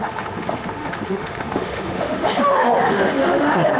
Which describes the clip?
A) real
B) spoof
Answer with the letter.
B